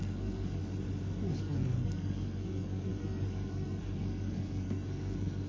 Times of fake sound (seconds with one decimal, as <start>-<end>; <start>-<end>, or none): 0.0-0.6; 1.4-5.5